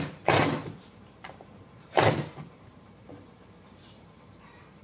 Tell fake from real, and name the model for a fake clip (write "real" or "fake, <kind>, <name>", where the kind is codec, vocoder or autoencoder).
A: fake, vocoder, BigVGAN v2